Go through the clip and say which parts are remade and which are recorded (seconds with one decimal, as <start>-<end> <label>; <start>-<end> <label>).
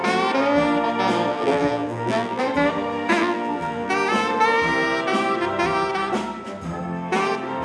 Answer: 0.0-1.3 recorded; 1.3-2.4 remade; 2.4-3.2 recorded; 3.2-3.9 remade; 3.9-7.6 recorded